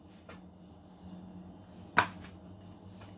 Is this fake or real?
real